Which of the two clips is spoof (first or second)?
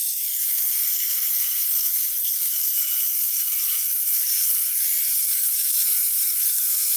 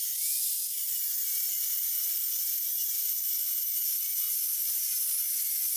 first